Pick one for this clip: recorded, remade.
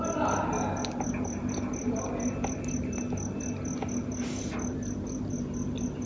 recorded